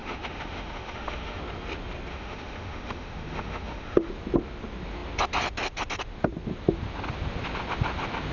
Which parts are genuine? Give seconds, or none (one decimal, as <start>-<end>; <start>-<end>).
1.4-2.1; 4.1-8.3